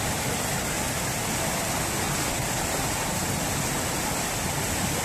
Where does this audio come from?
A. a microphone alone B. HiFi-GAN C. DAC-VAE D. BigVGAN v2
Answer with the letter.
A